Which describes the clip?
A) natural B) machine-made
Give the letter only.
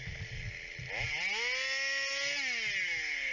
A